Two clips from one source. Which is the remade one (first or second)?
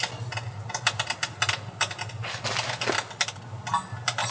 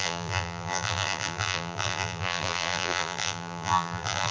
second